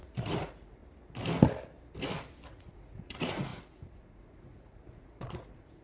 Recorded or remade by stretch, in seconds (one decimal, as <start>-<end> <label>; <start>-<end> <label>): 0.0-0.8 remade; 0.8-2.5 recorded; 2.5-5.8 remade